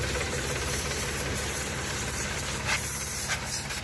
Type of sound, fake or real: fake